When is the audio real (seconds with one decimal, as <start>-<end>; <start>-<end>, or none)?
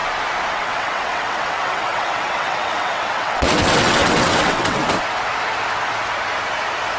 0.0-0.5; 4.8-7.0